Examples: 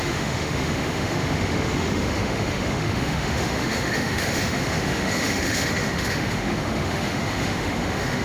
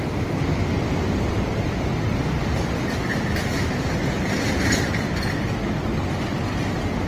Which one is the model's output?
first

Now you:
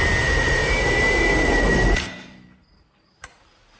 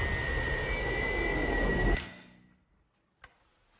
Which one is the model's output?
first